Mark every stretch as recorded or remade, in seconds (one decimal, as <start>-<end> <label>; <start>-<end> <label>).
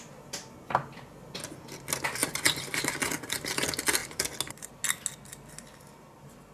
0.0-2.2 recorded; 2.2-2.9 remade; 2.9-6.5 recorded